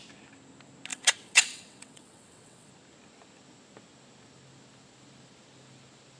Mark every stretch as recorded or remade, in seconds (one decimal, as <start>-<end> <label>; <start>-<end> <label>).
0.0-0.9 recorded; 0.9-2.7 remade; 2.7-6.2 recorded